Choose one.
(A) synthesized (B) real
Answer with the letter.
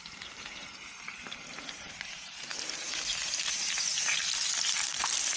A